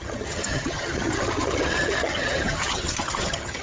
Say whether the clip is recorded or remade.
remade